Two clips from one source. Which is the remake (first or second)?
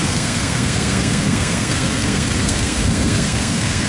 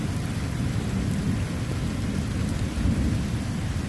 first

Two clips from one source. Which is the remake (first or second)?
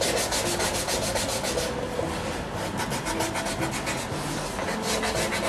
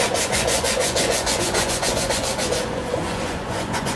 second